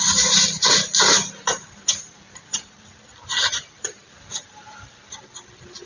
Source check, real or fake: real